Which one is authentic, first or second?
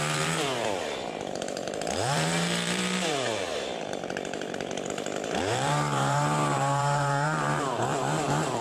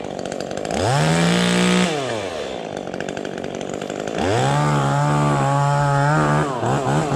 second